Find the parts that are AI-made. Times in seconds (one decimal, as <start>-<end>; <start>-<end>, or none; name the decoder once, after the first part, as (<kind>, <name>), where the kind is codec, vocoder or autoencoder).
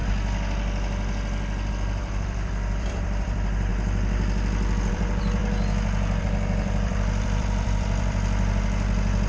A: 1.7-3.7 (vocoder, BigVGAN v2); 4.9-5.4; 6.2-9.3